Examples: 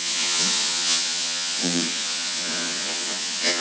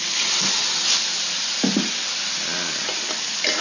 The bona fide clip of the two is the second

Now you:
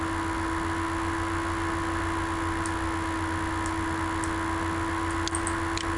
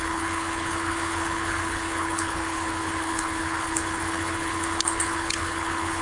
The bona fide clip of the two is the first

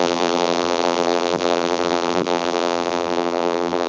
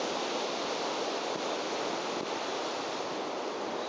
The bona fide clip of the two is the second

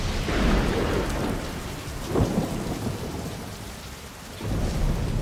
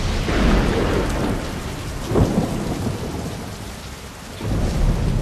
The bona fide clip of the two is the second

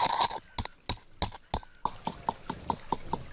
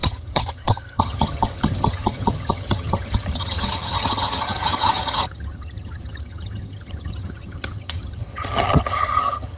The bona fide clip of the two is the first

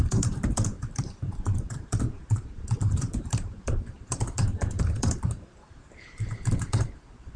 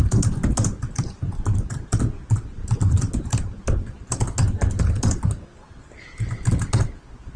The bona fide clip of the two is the second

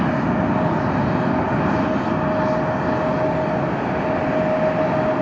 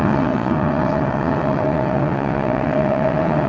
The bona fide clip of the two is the first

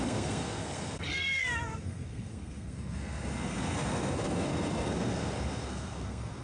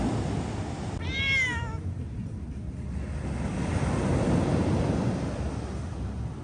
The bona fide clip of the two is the second